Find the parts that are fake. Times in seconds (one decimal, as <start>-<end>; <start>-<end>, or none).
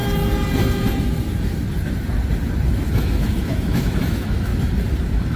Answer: 2.9-4.5; 5.0-5.4